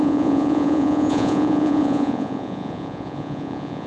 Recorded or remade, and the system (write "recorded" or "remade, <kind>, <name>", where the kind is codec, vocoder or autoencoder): remade, vocoder, Vocos